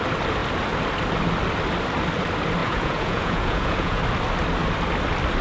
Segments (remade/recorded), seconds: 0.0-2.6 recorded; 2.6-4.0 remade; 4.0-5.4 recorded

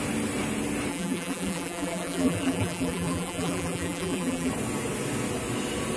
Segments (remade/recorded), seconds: 0.0-0.9 recorded; 0.9-4.5 remade; 4.5-6.0 recorded